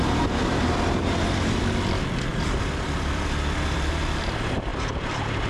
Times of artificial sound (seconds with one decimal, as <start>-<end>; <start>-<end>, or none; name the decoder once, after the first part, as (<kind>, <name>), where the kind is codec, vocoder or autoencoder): 1.0-1.6 (vocoder, BigVGAN v2); 2.3-3.9; 4.7-5.5